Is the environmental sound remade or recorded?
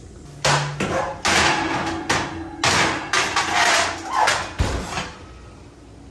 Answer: recorded